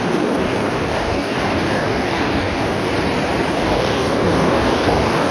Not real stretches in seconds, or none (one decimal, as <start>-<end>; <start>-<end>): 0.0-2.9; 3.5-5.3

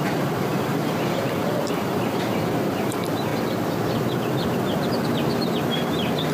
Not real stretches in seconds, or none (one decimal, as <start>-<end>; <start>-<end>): 0.0-3.3; 4.3-6.3

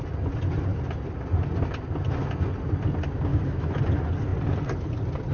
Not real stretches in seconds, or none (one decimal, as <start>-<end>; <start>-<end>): 3.3-3.8

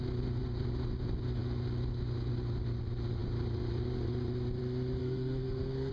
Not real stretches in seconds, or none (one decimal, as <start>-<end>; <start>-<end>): 5.0-5.9

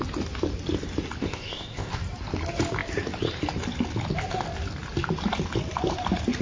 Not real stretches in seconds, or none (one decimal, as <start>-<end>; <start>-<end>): 1.2-2.0

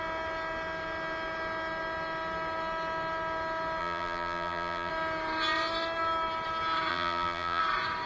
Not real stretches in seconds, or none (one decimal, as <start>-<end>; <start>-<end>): 3.8-4.9; 6.9-7.6